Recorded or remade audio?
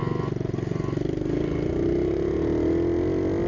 recorded